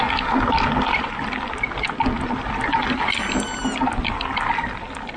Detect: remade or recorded recorded